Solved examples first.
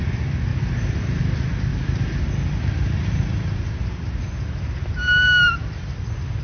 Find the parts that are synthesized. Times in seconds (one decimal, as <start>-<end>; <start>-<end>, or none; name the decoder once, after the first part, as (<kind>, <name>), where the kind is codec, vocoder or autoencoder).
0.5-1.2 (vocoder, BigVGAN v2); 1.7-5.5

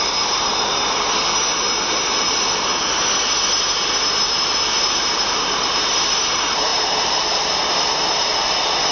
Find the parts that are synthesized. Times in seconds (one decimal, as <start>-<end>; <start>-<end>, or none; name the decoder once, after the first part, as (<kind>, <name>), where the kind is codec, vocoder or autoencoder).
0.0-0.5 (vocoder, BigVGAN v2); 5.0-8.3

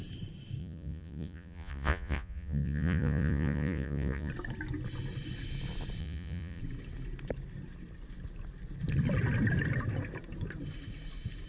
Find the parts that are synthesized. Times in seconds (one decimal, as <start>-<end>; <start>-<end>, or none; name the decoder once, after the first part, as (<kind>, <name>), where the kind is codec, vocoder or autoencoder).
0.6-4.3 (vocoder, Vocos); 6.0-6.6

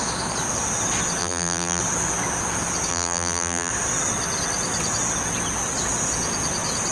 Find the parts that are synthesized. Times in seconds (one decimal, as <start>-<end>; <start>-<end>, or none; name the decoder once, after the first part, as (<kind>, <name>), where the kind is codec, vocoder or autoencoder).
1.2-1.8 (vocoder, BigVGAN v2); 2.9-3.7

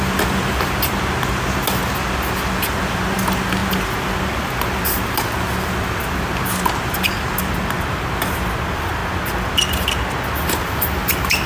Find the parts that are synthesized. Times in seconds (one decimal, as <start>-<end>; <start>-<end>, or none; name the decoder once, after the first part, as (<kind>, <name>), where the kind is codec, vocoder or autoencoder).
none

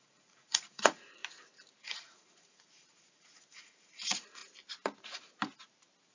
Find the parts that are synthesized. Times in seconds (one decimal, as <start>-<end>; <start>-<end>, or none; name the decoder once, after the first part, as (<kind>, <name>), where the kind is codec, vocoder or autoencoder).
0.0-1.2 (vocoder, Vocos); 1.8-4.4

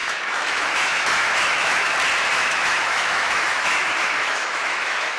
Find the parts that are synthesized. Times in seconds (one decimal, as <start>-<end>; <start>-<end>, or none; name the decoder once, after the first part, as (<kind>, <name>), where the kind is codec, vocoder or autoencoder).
0.0-1.9 (autoencoder, DAC-VAE); 2.3-5.2

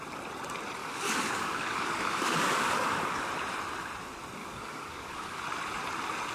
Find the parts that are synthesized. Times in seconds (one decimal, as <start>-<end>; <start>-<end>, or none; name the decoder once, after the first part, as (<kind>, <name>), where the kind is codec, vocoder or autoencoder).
0.8-3.3 (codec, DAC); 4.4-5.4